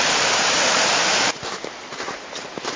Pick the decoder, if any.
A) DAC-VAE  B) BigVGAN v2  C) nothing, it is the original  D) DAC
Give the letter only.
B